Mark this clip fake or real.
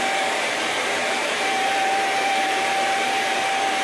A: fake